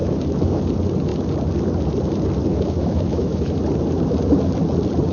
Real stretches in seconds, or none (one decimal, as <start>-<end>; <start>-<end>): 0.6-2.5; 3.6-5.1